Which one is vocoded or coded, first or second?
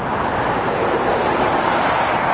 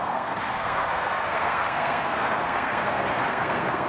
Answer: second